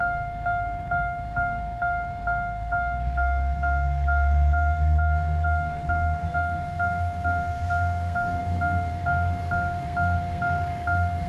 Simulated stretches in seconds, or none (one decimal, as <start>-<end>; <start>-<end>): 0.0-11.3